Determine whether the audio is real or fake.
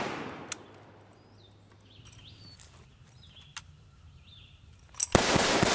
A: real